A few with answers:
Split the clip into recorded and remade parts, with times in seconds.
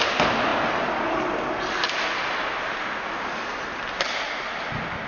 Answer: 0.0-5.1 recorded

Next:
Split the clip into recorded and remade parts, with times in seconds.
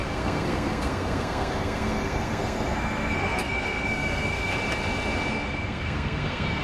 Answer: 0.0-4.5 remade; 4.5-5.3 recorded; 5.3-6.6 remade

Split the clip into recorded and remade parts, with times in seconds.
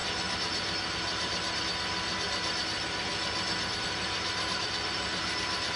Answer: 0.0-5.8 recorded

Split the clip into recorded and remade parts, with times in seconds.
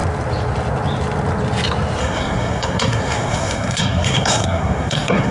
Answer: 0.0-2.0 recorded; 2.0-5.3 remade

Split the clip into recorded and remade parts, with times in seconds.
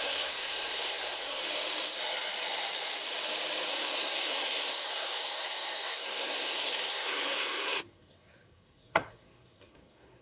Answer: 0.0-1.4 remade; 1.4-3.7 recorded; 3.7-10.2 remade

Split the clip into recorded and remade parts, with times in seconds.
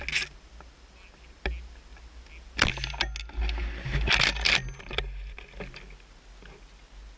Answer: 0.0-7.2 recorded